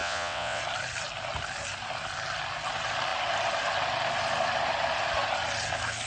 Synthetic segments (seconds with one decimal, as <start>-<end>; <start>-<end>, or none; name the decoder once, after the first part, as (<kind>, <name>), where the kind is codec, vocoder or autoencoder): 0.0-0.6 (vocoder, WaveNeXt)